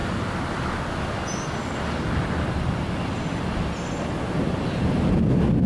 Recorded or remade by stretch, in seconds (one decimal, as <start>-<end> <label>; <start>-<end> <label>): 0.0-5.7 recorded